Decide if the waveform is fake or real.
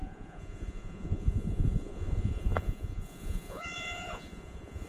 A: fake